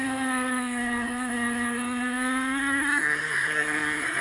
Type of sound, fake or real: fake